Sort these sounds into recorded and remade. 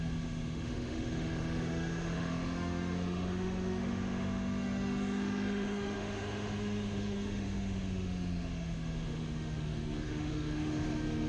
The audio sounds remade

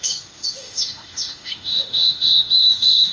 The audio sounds remade